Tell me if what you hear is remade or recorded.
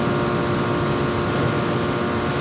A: recorded